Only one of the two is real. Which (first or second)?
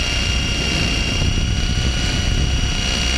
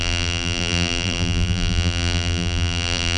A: first